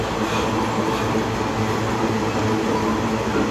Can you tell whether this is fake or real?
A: real